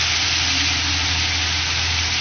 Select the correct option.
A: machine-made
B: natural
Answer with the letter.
B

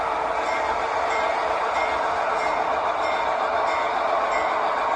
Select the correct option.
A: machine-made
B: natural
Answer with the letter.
B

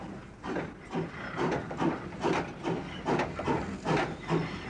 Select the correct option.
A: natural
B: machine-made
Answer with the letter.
A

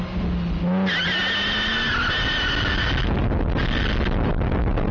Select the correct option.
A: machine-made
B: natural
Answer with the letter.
B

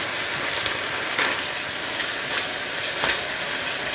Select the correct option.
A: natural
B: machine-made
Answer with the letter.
A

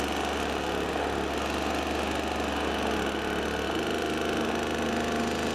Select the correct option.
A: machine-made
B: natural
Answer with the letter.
B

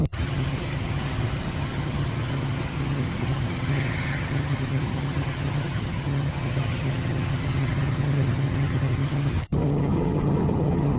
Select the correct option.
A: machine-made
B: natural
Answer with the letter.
A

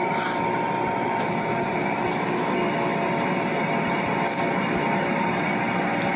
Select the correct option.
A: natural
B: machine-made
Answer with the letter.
A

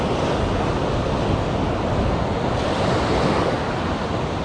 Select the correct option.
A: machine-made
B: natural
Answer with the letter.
B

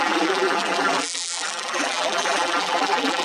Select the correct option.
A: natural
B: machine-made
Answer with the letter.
B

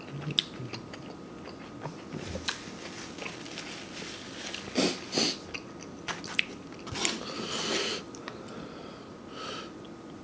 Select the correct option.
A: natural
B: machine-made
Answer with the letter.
A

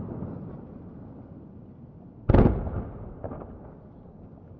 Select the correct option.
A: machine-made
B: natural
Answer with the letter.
B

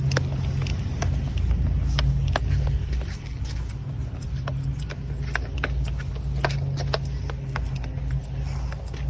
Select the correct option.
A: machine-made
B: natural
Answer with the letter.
B